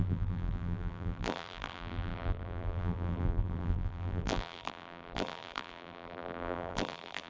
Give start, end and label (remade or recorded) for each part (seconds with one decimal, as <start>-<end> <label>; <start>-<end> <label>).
0.0-7.3 remade